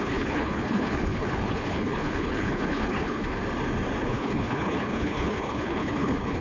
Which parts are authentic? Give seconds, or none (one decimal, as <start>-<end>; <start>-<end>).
3.4-4.0